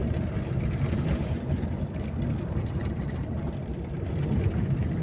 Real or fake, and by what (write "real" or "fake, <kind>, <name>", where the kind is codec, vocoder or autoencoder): real